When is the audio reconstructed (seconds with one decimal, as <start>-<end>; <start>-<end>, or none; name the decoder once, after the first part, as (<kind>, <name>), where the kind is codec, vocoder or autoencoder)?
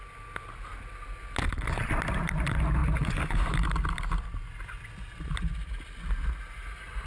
none